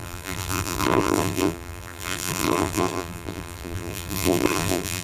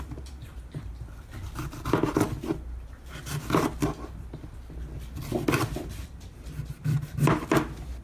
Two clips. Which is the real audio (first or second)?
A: second